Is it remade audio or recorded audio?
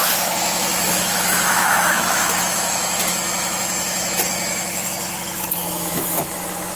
remade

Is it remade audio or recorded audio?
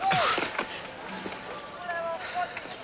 recorded